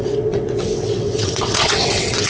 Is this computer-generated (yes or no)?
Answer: yes